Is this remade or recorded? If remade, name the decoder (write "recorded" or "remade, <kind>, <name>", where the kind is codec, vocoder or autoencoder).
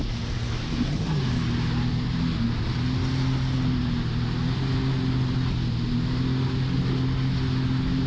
recorded